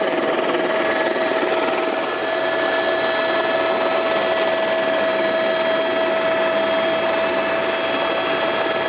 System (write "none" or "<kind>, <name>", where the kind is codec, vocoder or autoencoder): none